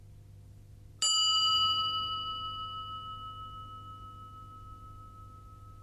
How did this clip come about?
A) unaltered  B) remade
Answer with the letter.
A